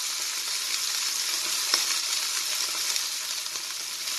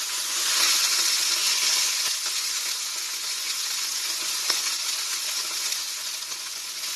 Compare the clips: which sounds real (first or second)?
first